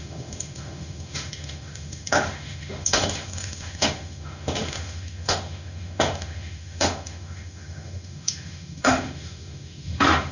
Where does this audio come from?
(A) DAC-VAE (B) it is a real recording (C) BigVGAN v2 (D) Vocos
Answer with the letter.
A